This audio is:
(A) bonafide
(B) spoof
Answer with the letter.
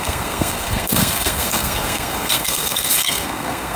B